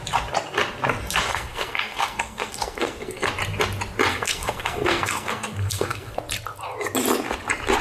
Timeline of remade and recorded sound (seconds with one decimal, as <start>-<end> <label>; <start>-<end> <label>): 0.0-1.3 recorded; 1.3-3.3 remade; 3.3-4.1 recorded; 4.1-6.2 remade; 6.2-7.8 recorded